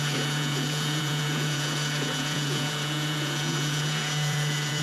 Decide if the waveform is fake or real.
fake